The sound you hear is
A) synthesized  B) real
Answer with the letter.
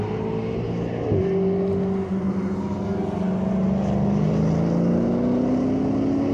B